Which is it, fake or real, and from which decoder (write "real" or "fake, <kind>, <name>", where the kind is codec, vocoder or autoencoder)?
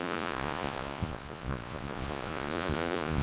fake, vocoder, Vocos